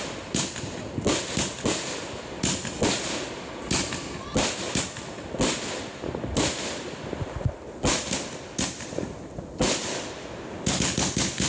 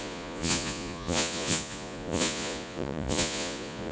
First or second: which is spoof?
second